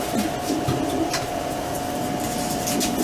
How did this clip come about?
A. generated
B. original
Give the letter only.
B